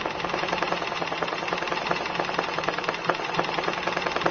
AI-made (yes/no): no